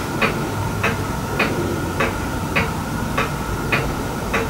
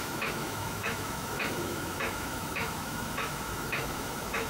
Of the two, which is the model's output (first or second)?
second